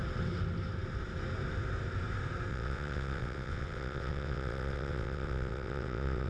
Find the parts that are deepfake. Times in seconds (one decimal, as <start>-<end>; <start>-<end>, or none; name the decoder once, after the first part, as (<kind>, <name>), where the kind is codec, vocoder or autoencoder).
2.5-6.3 (vocoder, WaveNeXt)